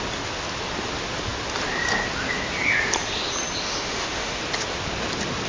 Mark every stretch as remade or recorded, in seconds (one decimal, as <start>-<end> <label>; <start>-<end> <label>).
0.0-3.6 recorded; 3.6-4.4 remade; 4.4-5.5 recorded